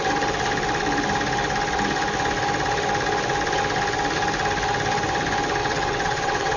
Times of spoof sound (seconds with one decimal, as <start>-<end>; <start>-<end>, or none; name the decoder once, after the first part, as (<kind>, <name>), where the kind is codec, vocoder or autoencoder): 5.6-6.6 (vocoder, WaveNeXt)